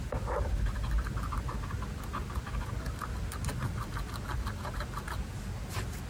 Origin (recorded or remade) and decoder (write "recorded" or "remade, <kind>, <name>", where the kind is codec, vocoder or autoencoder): recorded